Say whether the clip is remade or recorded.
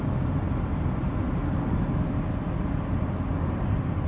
recorded